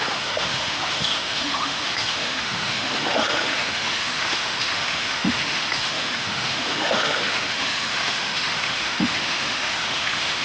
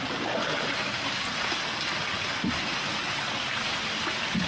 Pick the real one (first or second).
second